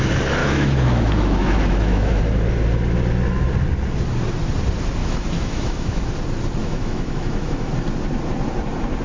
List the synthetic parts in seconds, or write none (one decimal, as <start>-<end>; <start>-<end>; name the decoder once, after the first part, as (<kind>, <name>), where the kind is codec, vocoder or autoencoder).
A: 0.4-2.2 (autoencoder, DAC-VAE); 5.0-6.0; 6.6-7.7